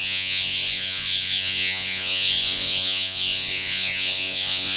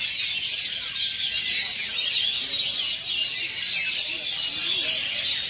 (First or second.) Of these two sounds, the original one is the second